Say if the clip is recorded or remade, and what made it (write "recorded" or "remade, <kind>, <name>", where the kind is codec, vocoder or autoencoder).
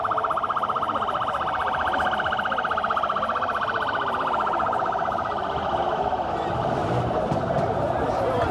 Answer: recorded